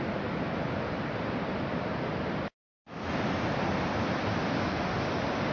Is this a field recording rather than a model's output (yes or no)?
yes